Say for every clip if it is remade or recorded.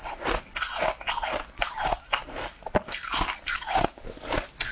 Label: recorded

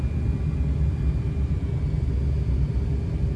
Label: recorded